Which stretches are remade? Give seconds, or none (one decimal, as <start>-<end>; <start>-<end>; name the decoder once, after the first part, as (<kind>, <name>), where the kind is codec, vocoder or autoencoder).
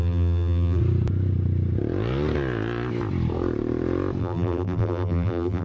0.0-0.8 (vocoder, BigVGAN v2); 4.2-5.6